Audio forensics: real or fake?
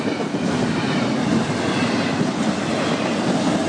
real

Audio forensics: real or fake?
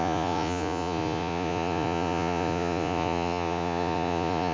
fake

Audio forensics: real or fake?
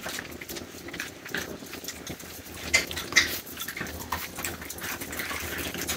real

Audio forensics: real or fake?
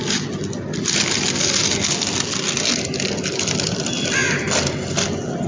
real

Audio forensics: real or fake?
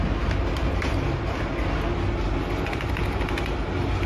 real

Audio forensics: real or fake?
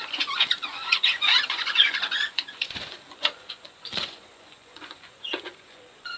fake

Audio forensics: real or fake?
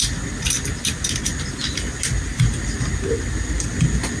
real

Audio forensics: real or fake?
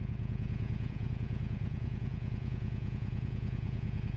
fake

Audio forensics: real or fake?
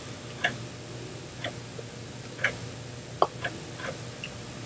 real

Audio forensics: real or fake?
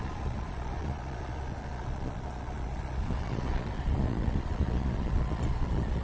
fake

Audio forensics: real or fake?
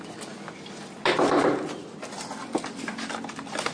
real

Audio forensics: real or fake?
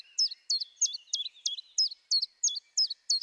real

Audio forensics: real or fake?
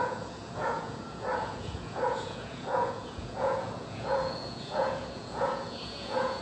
fake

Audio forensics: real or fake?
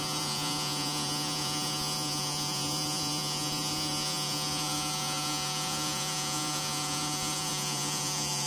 fake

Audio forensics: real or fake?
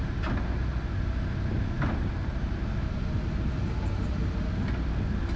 real